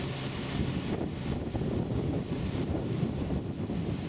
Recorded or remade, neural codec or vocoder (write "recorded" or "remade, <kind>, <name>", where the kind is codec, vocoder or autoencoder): recorded